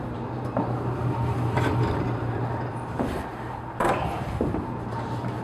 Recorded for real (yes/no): no